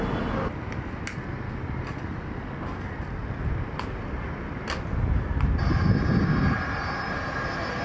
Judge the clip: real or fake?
real